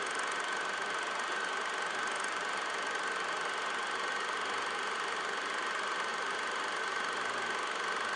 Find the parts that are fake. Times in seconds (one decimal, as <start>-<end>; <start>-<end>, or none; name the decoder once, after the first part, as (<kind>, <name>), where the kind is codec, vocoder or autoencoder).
none